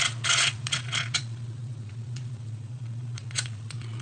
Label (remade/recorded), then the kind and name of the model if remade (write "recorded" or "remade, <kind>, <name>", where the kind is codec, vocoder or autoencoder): remade, vocoder, Vocos